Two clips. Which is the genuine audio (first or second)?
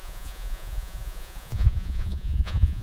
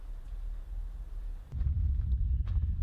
second